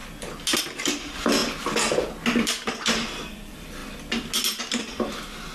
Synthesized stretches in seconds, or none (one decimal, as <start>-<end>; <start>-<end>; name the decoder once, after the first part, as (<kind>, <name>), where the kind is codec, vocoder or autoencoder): 0.6-1.4 (vocoder, BigVGAN v2); 3.3-3.8; 4.6-5.5